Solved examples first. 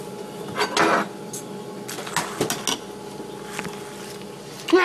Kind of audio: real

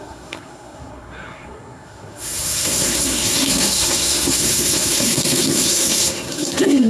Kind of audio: fake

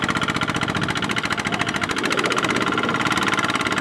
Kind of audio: real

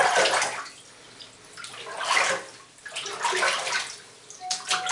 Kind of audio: real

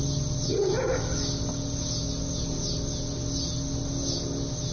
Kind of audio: real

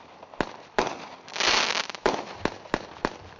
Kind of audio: real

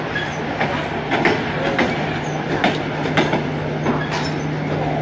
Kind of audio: real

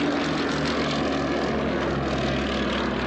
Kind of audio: real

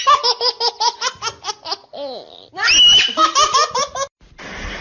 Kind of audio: real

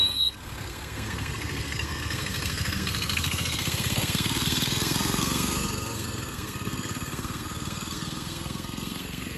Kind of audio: fake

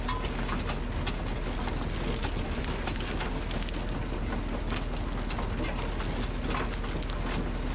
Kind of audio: real